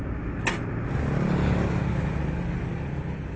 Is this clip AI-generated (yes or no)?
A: no